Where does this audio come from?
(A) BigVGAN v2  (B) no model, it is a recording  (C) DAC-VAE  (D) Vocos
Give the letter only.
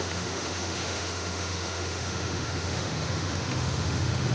C